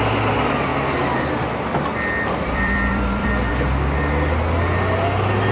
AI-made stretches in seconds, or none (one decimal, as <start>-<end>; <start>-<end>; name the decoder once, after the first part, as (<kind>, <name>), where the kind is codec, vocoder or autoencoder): 1.9-3.5 (vocoder, BigVGAN v2)